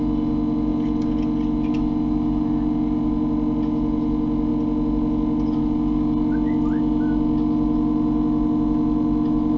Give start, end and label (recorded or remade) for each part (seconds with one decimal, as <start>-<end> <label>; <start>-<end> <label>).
0.0-9.6 recorded